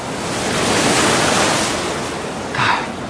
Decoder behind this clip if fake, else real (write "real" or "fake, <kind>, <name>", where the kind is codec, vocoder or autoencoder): real